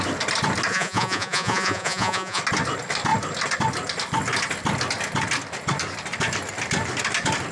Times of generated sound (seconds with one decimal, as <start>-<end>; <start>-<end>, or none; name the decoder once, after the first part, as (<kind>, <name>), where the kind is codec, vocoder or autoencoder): 0.7-2.4 (vocoder, Vocos)